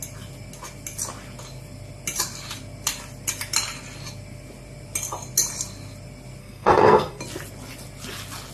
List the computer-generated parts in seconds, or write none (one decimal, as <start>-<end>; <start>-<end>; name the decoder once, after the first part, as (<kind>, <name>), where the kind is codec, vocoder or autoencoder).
6.4-7.2 (codec, SNAC)